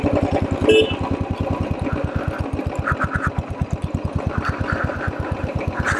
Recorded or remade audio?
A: recorded